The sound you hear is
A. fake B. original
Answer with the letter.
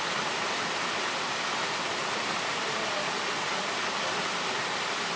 B